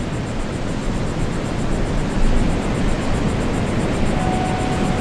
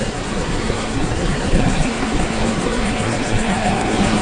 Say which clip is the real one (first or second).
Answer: first